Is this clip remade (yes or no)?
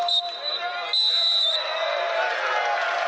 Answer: no